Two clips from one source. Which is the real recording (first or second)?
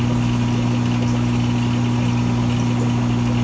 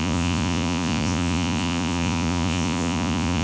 first